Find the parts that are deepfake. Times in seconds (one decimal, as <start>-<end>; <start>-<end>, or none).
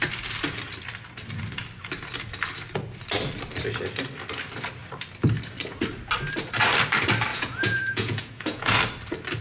7.3-8.8